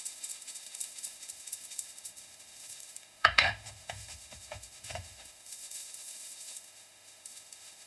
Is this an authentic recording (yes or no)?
no